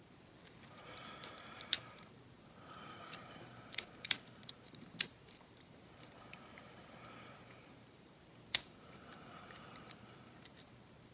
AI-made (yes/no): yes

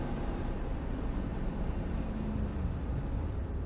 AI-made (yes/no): yes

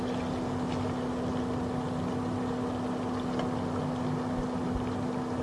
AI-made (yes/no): no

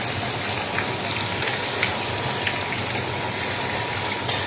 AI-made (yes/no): no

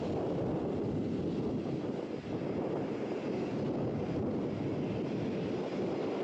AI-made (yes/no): no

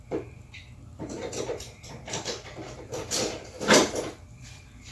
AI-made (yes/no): yes